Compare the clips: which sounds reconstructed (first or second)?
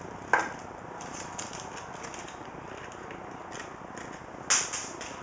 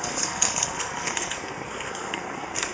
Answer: second